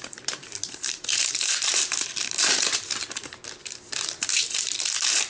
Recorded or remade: remade